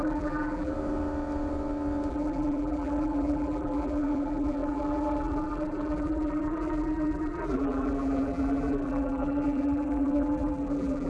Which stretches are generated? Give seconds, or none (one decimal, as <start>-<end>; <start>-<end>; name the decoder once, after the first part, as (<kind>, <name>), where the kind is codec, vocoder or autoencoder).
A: 0.0-0.7 (vocoder, BigVGAN v2); 2.1-11.1